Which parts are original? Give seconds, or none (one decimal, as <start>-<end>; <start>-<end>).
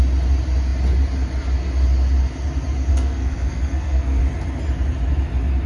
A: 0.0-2.9; 4.2-5.7